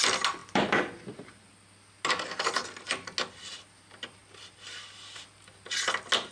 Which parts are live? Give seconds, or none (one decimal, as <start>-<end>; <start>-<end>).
0.0-6.3